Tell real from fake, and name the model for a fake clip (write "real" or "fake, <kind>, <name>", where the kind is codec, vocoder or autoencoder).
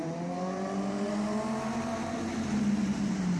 real